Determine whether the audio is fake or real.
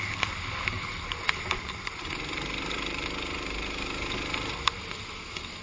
real